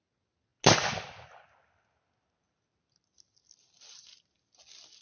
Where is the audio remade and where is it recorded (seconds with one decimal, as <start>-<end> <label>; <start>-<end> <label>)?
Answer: 0.0-5.0 recorded